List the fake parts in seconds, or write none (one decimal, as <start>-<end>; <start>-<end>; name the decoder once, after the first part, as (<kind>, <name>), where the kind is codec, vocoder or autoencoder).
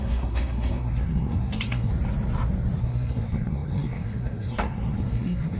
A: 0.0-1.9 (codec, SNAC); 2.8-5.6